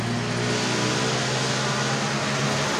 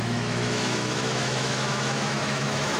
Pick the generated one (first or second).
second